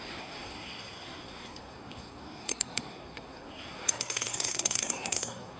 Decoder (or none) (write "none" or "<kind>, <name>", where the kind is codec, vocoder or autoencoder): codec, SNAC